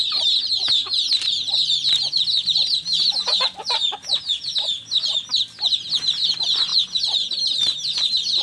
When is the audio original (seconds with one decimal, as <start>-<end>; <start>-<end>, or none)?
0.0-8.4